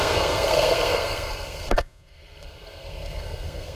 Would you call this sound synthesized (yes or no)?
yes